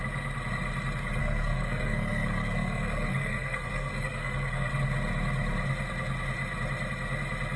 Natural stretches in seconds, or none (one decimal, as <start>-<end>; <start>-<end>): 0.0-1.2; 4.7-7.6